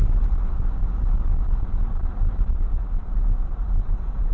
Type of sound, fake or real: real